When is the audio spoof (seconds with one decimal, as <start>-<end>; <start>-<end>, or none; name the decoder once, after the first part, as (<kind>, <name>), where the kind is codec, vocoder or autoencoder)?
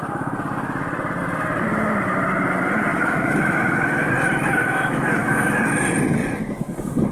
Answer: 2.9-4.1 (autoencoder, DAC-VAE); 4.6-5.6